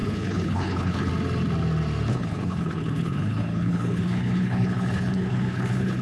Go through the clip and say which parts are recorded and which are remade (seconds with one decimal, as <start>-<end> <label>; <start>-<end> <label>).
0.0-1.1 remade; 1.1-2.1 recorded; 2.1-6.0 remade